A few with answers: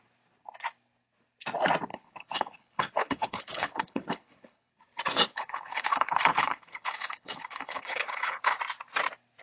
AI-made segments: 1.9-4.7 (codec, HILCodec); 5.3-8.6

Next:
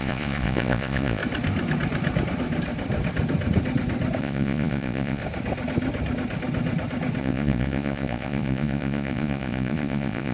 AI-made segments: 0.0-1.2 (vocoder, Vocos); 4.2-5.2; 7.2-10.3

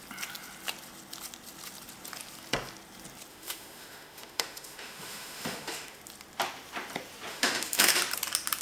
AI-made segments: 3.3-6.0 (autoencoder, DAC-VAE); 7.3-8.0

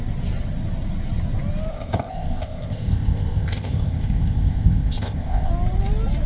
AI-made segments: 1.7-5.5 (codec, ZipCodec)

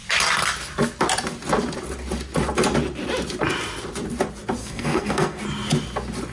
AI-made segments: 4.6-5.4 (codec, SNAC)

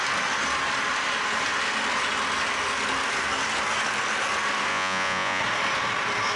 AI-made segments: 4.7-5.4 (vocoder, Vocos)